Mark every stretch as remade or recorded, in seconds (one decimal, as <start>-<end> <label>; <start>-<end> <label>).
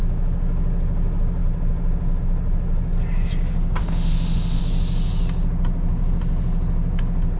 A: 0.0-3.8 recorded; 3.8-4.6 remade; 4.6-7.4 recorded